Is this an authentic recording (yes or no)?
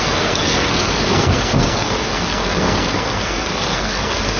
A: no